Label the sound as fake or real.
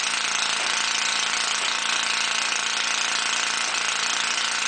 real